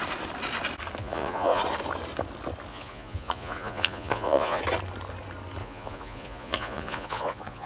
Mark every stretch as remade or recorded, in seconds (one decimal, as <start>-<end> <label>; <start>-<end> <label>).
0.0-1.0 recorded; 1.0-1.6 remade; 1.6-2.7 recorded; 2.7-4.6 remade; 4.6-5.6 recorded; 5.6-7.7 remade